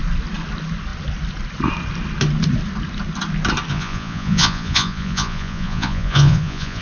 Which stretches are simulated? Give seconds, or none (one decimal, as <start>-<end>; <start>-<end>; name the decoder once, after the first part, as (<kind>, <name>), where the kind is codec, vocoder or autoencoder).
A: 3.7-6.8 (vocoder, Vocos)

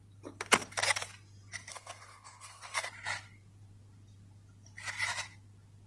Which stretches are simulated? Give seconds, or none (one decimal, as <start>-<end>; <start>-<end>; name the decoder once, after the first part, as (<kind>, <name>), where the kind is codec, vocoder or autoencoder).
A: 1.7-2.9 (codec, SNAC)

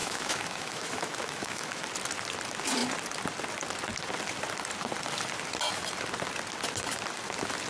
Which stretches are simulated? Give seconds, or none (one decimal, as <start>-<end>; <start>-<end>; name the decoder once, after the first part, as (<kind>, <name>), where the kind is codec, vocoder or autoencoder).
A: 0.0-1.8 (autoencoder, DAC-VAE)

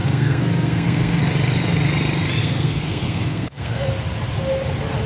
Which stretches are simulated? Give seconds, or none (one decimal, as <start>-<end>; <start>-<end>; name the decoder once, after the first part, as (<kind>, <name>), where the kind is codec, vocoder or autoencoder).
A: 0.0-1.2 (codec, SNAC); 2.4-3.9

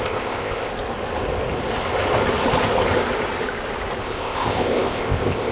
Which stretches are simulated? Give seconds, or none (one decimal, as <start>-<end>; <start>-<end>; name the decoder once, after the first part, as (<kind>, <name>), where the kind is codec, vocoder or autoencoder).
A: 0.0-0.7 (codec, ZipCodec); 4.0-5.5

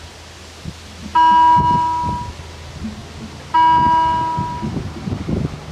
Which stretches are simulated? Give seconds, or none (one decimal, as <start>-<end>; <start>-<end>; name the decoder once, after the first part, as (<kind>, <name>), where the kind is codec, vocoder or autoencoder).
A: none

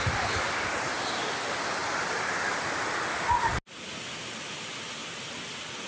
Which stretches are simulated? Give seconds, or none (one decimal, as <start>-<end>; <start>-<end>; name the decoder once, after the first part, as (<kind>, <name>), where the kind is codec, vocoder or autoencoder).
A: none

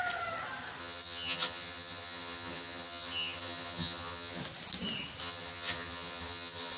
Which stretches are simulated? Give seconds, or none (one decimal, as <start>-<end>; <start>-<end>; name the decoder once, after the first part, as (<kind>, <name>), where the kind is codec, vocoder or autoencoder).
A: 0.8-4.4 (vocoder, HiFi-GAN); 5.2-6.8